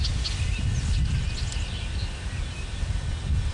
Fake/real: real